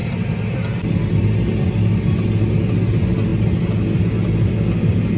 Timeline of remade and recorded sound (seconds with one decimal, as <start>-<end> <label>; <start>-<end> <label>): 0.0-5.2 recorded